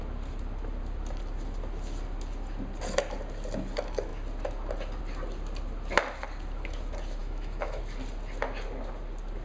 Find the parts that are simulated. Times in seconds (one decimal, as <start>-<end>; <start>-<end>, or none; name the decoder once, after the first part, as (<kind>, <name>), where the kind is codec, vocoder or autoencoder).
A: 7.2-7.8 (autoencoder, DAC-VAE)